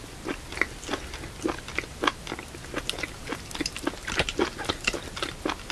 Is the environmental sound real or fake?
real